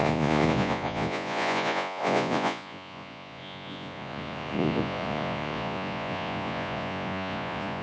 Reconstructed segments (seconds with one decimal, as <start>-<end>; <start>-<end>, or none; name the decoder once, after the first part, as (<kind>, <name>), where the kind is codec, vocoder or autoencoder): 0.0-7.8 (vocoder, Vocos)